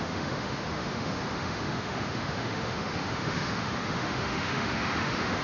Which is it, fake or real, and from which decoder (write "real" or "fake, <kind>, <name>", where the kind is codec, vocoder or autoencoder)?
fake, autoencoder, DAC-VAE